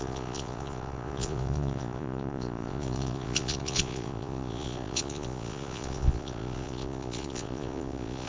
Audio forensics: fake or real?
fake